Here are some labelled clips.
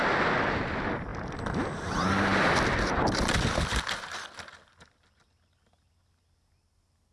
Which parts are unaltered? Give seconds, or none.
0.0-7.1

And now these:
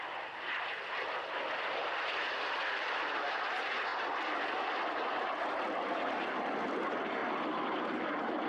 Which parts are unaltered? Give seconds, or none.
0.0-8.5

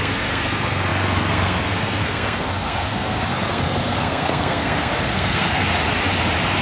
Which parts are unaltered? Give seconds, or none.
5.6-6.6

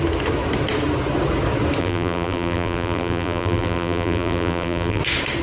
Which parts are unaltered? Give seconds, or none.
0.0-1.8; 5.0-5.4